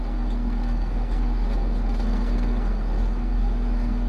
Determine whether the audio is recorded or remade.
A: remade